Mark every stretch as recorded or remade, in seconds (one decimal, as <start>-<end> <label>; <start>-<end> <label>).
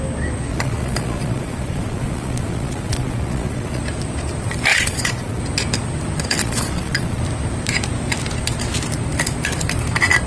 0.0-0.5 recorded; 0.5-3.8 remade; 3.8-4.7 recorded; 4.7-5.4 remade; 5.4-6.4 recorded; 6.4-7.2 remade; 7.2-10.3 recorded